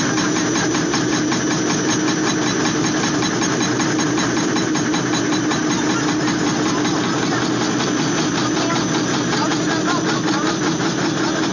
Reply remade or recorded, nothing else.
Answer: recorded